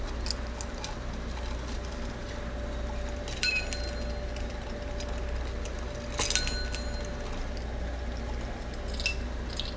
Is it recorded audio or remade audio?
recorded